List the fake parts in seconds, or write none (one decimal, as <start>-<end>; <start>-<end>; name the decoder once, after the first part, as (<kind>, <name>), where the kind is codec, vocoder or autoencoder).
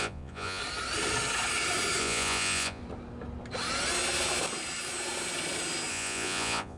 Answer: 0.0-0.6 (vocoder, Vocos); 2.0-2.8; 5.9-6.8